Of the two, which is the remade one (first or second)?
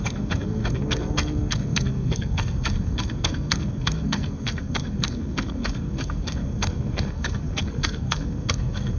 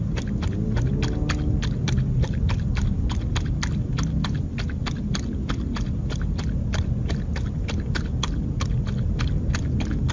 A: first